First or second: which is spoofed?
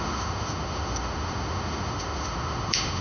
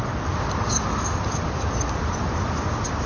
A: first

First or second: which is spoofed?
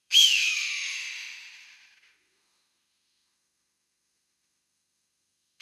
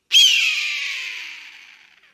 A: first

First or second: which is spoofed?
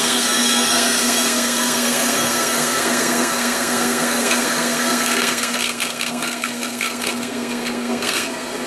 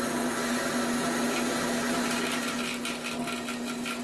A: first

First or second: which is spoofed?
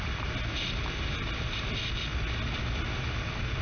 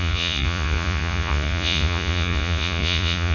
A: second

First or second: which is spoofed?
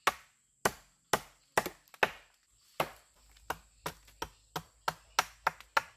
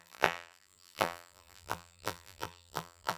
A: second